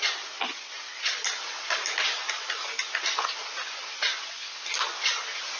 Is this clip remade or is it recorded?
recorded